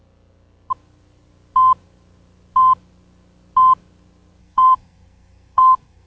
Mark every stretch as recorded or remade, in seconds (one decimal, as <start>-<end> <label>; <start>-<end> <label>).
0.0-4.4 recorded; 4.4-6.1 remade